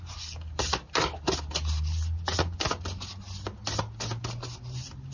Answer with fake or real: real